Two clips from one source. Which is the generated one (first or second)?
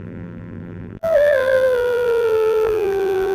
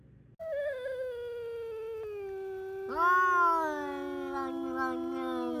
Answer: first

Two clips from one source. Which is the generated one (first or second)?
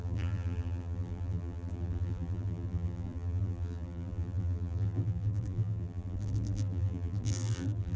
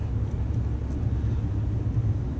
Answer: first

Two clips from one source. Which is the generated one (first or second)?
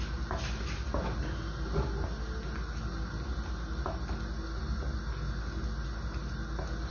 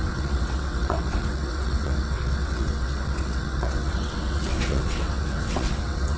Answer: second